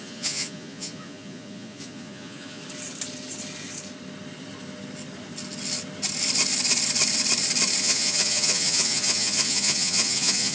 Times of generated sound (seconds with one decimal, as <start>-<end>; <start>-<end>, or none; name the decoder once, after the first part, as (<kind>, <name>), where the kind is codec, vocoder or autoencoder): 0.0-2.6 (vocoder, Vocos); 7.8-10.5

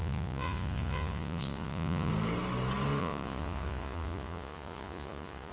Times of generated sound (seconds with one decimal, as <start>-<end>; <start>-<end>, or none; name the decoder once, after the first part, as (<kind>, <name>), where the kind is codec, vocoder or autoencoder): 0.0-2.1 (vocoder, Vocos); 3.0-5.5